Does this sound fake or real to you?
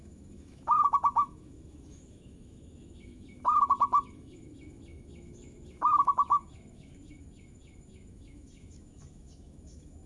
fake